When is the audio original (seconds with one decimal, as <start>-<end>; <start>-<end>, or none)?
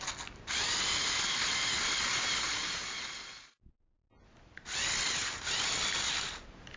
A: 0.0-6.8